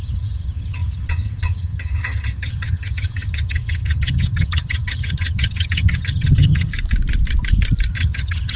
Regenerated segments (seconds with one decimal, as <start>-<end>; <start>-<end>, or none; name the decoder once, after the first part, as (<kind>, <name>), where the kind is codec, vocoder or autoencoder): 0.0-6.7 (vocoder, HiFi-GAN); 7.9-8.6